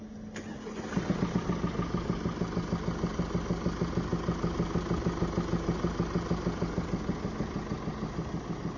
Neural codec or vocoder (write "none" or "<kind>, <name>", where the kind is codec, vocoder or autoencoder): none